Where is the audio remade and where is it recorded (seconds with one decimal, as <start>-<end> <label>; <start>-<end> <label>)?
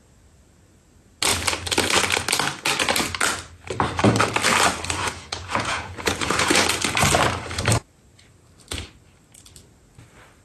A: 0.0-5.0 recorded; 5.0-6.6 remade; 6.6-10.4 recorded